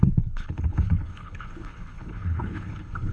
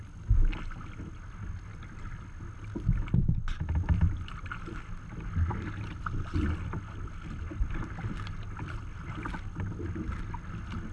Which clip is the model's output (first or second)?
first